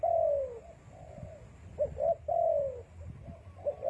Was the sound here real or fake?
real